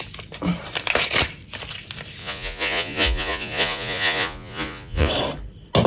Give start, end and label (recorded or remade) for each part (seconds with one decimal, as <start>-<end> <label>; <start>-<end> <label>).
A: 0.0-2.2 recorded; 2.2-5.1 remade; 5.1-5.9 recorded